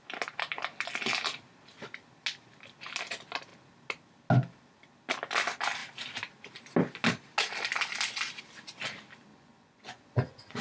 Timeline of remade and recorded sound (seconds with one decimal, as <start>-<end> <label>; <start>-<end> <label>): 0.0-9.3 recorded; 9.3-10.6 remade